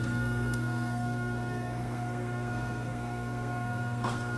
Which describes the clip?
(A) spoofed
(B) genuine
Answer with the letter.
A